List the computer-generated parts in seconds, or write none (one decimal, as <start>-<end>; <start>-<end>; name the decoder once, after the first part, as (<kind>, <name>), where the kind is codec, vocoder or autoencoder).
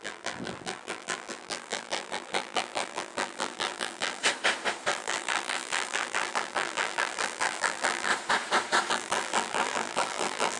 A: 0.0-4.2 (vocoder, BigVGAN v2); 4.9-8.1; 8.9-10.6